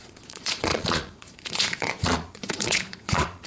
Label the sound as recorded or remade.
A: remade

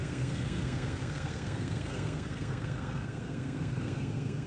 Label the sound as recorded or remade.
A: remade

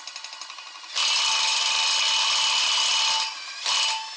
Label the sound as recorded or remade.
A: recorded